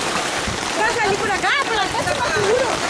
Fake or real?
fake